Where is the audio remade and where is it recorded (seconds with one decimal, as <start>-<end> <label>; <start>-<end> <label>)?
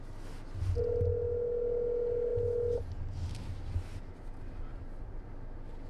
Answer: 0.0-5.9 recorded